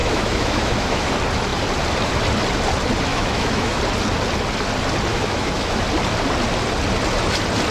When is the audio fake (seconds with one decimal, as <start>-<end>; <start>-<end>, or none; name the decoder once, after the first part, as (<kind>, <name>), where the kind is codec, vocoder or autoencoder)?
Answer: 0.0-1.1 (autoencoder, DAC-VAE); 3.1-3.8; 5.1-5.8